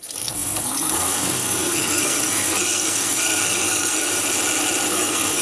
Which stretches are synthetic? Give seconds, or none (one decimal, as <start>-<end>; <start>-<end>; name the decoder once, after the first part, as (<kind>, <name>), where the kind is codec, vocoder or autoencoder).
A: 0.0-4.1 (codec, SNAC); 4.9-5.4